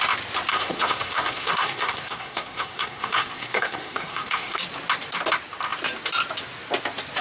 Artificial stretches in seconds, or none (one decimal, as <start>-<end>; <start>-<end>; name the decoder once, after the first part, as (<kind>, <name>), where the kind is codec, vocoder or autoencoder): 0.5-4.6 (codec, SNAC)